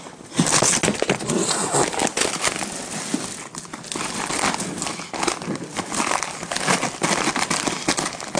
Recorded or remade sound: recorded